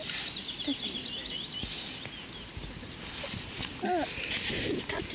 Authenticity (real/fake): real